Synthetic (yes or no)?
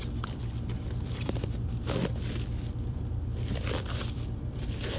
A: yes